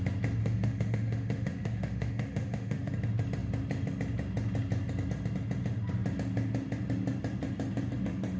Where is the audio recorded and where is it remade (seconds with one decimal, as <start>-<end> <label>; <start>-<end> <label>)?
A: 0.0-0.4 recorded; 0.4-2.9 remade; 2.9-8.4 recorded